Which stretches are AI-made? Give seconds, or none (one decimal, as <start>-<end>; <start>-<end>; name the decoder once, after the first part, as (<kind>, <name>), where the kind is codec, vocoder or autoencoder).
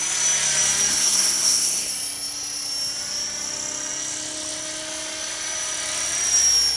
0.9-1.9 (codec, SNAC)